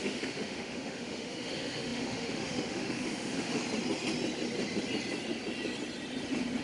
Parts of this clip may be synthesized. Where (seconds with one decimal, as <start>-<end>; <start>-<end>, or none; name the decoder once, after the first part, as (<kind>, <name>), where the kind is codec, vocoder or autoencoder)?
0.0-3.6 (autoencoder, DAC-VAE)

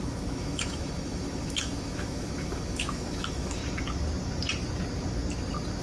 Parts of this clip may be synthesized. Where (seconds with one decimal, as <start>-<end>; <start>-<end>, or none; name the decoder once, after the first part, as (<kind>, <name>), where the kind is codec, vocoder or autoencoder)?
0.0-3.6 (autoencoder, DAC-VAE)

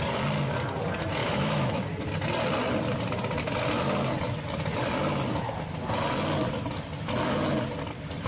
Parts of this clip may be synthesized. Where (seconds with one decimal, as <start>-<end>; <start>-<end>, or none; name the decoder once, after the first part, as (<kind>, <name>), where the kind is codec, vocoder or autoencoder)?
1.2-1.8 (autoencoder, DAC-VAE)

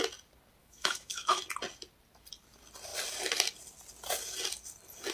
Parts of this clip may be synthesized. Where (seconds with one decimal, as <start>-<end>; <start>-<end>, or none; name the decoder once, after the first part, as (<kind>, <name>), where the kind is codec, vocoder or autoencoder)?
0.6-1.4 (autoencoder, DAC-VAE)

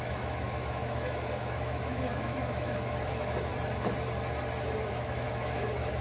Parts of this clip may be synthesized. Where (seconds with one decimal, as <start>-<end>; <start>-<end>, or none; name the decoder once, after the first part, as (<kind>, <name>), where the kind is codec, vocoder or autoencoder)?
0.0-3.5 (autoencoder, DAC-VAE); 4.9-6.0